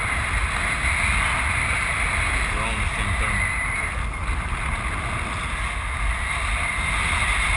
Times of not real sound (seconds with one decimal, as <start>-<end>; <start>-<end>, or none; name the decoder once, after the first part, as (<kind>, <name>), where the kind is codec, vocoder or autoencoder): none